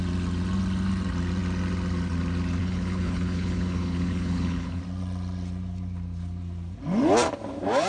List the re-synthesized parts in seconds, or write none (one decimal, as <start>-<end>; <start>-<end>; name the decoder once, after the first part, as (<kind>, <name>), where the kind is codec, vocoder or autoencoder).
2.6-4.8 (codec, HILCodec)

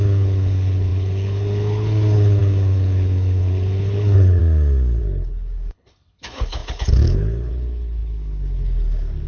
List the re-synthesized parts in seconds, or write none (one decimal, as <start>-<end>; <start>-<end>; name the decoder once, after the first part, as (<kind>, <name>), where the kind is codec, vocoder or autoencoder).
0.0-4.4 (codec, HILCodec); 5.0-9.3

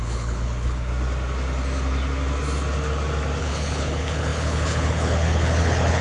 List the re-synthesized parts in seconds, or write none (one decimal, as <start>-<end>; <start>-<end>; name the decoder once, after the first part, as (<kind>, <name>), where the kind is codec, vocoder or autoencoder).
0.0-0.9 (codec, HILCodec); 3.4-6.0

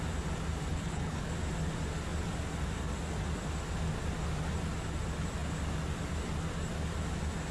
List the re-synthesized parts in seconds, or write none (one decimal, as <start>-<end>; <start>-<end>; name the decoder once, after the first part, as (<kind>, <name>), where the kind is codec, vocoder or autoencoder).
0.7-1.3 (codec, HILCodec)

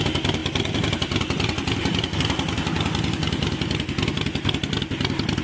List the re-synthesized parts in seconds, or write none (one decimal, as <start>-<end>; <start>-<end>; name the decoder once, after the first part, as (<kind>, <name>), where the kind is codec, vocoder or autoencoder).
none

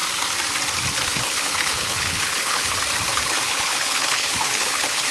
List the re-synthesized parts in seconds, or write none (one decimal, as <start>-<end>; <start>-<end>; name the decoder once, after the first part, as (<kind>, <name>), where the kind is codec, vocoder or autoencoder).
1.1-2.7 (codec, HILCodec); 3.1-5.1